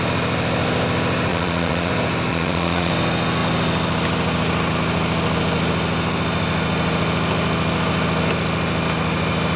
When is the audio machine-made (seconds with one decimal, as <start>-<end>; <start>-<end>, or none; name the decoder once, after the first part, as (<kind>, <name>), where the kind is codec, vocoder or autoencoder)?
1.3-1.9 (vocoder, Vocos); 2.3-2.9